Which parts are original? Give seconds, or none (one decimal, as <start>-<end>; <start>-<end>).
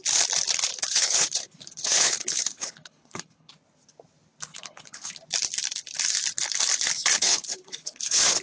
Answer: 0.0-0.7; 3.5-4.5; 5.2-7.1